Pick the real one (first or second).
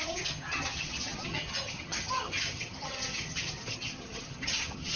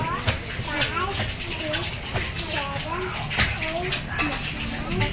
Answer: second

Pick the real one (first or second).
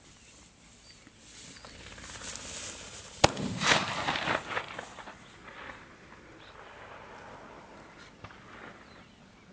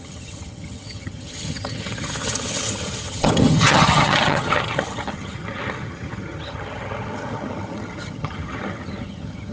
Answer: first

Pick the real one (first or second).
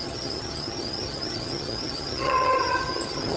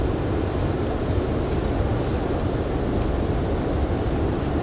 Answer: second